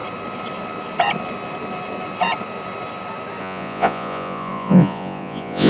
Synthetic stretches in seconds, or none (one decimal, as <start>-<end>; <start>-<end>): 3.4-5.7